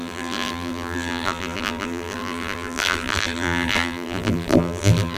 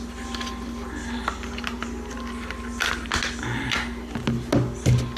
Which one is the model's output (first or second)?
first